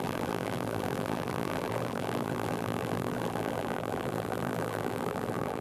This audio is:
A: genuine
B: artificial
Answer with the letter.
B